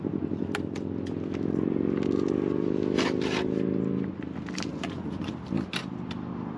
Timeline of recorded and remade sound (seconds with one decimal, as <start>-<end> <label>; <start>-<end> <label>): 0.0-4.7 recorded; 4.7-5.3 remade; 5.3-6.6 recorded